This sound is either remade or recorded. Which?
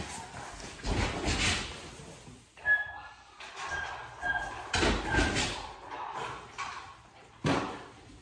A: recorded